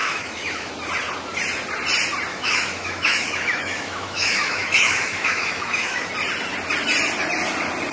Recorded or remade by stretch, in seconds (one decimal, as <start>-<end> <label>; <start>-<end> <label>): 0.0-0.7 remade; 0.7-2.3 recorded; 2.3-6.1 remade; 6.1-7.9 recorded